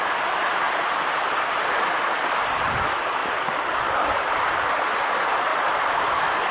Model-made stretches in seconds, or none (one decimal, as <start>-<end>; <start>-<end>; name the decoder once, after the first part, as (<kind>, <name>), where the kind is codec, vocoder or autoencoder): none